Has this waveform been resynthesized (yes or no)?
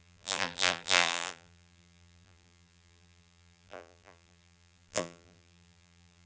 yes